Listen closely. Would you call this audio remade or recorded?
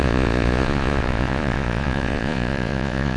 remade